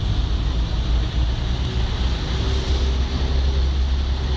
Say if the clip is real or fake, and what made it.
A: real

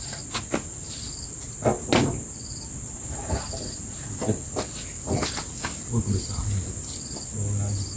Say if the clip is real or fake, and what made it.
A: real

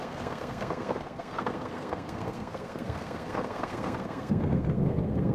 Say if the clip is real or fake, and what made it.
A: fake, codec, SNAC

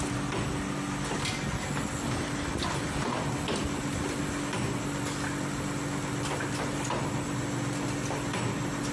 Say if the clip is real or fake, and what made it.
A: real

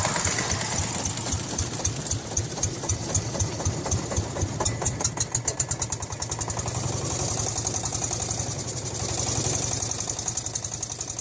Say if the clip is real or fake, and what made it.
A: real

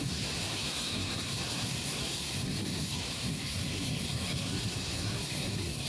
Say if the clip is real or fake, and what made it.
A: fake, codec, SNAC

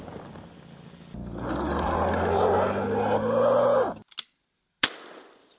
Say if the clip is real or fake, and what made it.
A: real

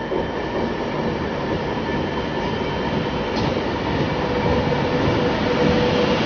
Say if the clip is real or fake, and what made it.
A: real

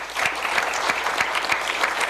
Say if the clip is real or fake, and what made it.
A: fake, vocoder, BigVGAN v2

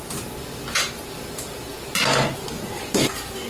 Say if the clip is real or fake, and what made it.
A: real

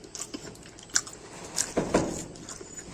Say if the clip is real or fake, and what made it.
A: real